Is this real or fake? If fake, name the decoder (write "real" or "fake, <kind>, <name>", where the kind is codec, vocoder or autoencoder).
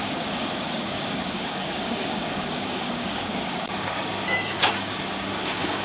fake, codec, DAC